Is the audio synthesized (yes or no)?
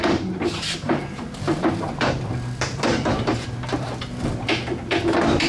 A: yes